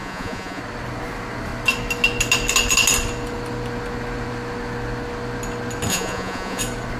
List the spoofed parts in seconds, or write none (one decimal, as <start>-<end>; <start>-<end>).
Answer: 0.0-0.6; 5.9-6.6